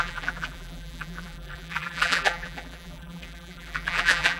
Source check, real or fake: fake